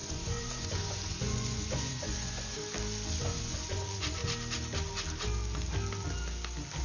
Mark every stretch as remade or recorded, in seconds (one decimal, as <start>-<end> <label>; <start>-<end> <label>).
0.0-2.6 remade; 2.6-3.2 recorded; 3.2-4.2 remade; 4.2-6.8 recorded